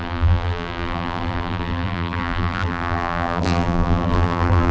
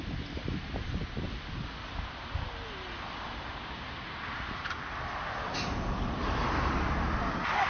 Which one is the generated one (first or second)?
first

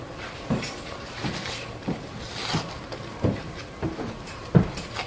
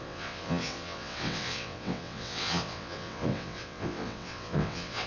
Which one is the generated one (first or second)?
second